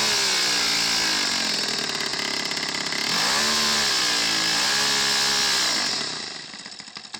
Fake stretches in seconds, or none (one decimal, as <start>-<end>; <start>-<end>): none